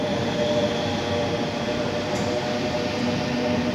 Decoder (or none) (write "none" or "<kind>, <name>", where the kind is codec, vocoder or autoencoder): none